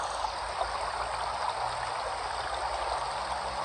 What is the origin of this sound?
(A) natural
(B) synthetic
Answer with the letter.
A